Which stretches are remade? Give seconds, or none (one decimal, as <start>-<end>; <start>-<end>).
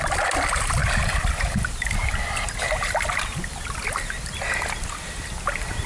none